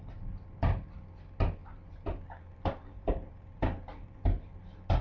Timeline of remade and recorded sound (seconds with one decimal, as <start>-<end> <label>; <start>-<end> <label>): 0.0-1.6 recorded; 1.6-4.6 remade; 4.6-5.0 recorded